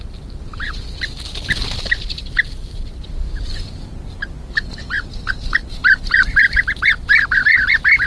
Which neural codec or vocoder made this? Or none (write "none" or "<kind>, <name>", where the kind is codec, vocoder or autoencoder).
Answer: none